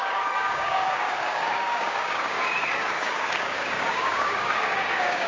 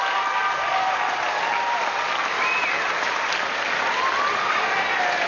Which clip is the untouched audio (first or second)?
second